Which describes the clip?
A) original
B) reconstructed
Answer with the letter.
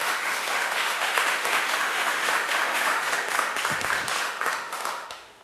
B